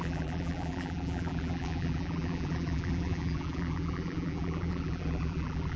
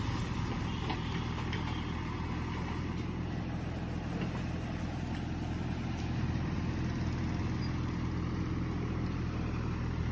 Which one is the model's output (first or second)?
first